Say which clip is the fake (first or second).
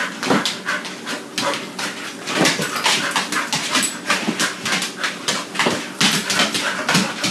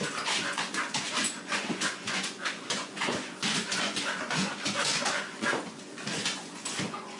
second